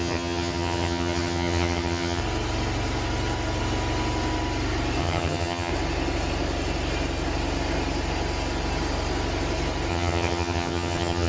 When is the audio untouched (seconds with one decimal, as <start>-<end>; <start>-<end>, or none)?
2.2-5.0; 5.7-9.9